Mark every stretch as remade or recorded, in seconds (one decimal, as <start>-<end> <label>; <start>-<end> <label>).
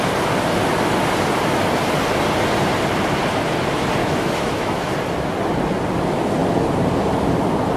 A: 0.0-4.0 recorded; 4.0-4.9 remade; 4.9-7.8 recorded